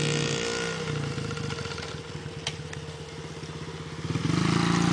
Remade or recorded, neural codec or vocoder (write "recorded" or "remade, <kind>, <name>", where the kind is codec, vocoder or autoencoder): recorded